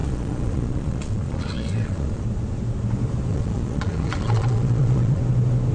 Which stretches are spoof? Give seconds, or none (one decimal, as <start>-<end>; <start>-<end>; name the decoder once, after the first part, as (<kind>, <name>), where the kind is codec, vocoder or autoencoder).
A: 0.0-2.2 (vocoder, Vocos); 3.3-5.2